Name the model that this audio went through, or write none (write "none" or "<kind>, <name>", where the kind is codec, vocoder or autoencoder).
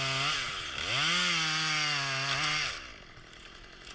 none